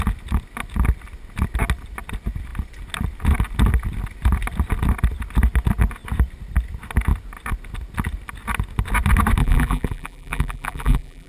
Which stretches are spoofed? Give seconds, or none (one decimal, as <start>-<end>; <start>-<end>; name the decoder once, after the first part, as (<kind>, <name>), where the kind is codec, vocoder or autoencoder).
9.4-11.3 (vocoder, BigVGAN v2)